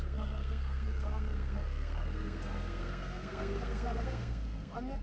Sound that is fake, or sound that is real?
fake